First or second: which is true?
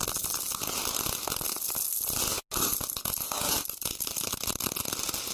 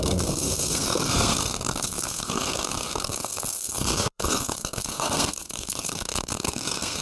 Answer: first